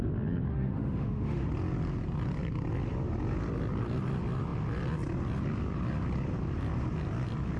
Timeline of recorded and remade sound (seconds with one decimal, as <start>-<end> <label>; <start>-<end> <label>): 0.0-0.5 recorded; 0.5-1.5 remade; 1.5-7.6 recorded